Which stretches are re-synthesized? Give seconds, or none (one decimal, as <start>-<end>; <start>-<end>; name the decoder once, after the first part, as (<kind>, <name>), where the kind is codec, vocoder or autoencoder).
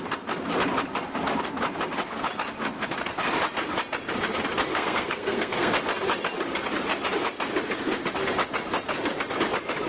4.7-5.7 (codec, SNAC)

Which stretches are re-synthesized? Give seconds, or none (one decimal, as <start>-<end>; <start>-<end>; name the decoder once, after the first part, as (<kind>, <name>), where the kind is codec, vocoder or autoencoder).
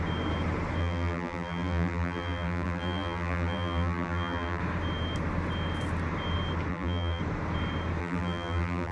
0.8-4.6 (vocoder, BigVGAN v2); 6.7-7.2; 8.0-8.9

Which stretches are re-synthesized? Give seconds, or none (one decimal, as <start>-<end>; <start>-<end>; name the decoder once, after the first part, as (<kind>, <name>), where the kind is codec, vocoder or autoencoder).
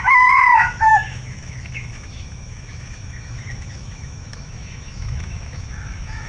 0.0-6.3 (autoencoder, DAC-VAE)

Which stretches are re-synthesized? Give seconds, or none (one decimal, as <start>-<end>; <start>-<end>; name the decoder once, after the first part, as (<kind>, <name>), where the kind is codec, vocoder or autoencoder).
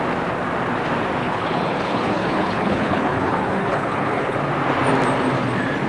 1.2-4.4 (codec, HILCodec)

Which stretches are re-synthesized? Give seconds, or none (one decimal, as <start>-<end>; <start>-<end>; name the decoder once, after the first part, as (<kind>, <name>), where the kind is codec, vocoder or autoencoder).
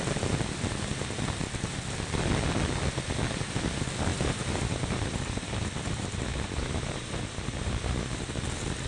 4.1-8.5 (vocoder, BigVGAN v2)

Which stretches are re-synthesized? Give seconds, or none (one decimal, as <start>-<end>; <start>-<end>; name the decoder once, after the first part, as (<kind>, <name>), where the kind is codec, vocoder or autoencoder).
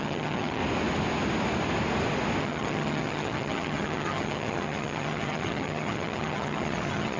0.0-0.6 (vocoder, HiFi-GAN); 2.4-7.2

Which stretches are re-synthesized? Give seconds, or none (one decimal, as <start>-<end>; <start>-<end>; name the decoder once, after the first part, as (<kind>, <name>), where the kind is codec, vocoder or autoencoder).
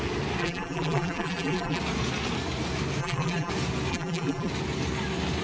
0.4-1.8 (vocoder, BigVGAN v2); 3.0-3.5; 3.9-4.5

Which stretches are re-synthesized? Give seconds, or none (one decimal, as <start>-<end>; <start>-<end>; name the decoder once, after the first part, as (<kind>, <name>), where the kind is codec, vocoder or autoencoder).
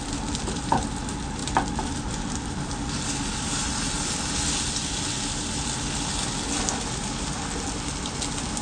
none